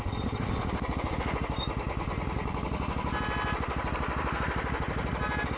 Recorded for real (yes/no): yes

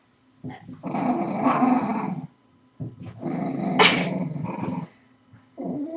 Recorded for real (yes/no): yes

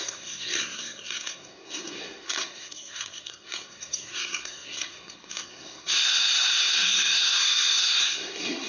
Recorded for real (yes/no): no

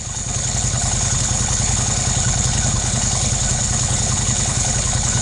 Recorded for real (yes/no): no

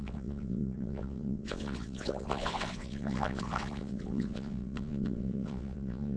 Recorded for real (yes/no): no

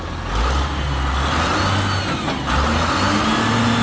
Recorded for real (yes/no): yes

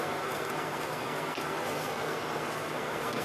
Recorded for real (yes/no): no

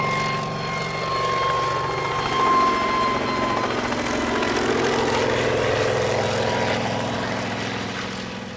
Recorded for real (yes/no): yes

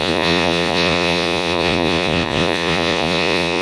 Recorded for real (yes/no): no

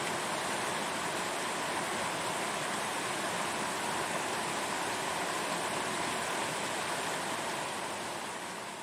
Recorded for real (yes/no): yes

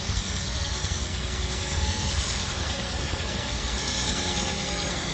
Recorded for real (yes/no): no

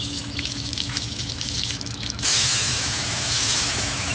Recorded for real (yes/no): no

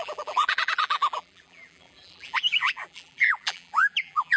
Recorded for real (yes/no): no